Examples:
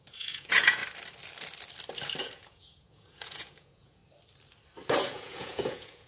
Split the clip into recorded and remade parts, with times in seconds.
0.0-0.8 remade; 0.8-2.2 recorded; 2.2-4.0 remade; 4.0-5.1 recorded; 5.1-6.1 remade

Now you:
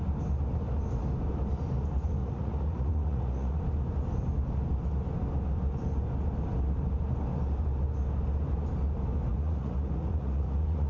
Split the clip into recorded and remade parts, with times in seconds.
0.0-2.2 recorded; 2.2-3.6 remade; 3.6-9.3 recorded; 9.3-10.9 remade

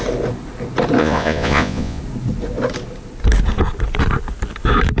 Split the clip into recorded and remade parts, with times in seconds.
0.0-1.0 recorded; 1.0-2.0 remade; 2.0-5.0 recorded

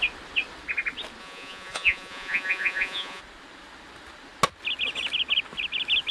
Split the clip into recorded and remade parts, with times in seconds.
0.0-1.2 recorded; 1.2-3.2 remade; 3.2-6.1 recorded

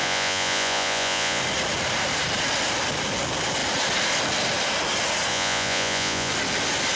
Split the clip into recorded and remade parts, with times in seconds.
0.0-1.4 remade; 1.4-5.3 recorded; 5.3-6.3 remade; 6.3-7.0 recorded